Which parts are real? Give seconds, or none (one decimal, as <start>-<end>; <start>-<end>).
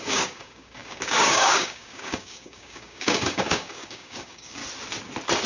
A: 4.6-5.5